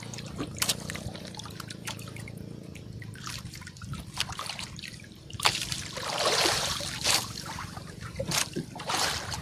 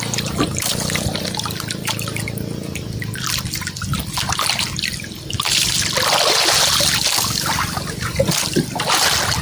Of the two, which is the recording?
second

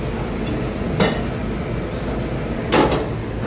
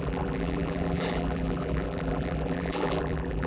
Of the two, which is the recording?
first